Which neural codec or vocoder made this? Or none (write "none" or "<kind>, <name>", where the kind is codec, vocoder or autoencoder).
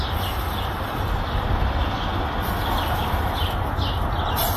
none